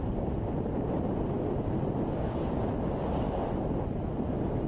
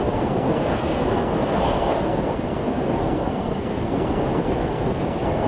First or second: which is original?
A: first